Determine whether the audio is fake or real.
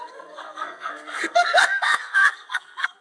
fake